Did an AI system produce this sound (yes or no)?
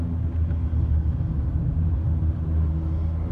no